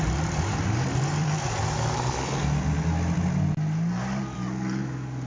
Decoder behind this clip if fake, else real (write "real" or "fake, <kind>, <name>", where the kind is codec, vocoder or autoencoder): real